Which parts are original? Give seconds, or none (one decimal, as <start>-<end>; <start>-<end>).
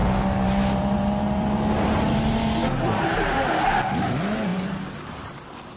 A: 2.6-5.8